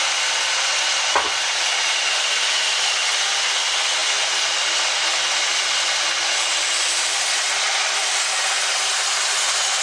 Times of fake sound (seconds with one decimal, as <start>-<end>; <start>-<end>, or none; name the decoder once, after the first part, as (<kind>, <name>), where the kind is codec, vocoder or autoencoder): none